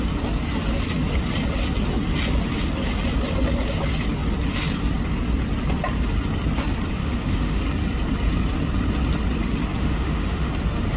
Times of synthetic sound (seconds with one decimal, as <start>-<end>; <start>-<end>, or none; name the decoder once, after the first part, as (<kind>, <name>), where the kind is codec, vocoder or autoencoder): 7.0-7.6 (autoencoder, DAC-VAE); 9.8-10.5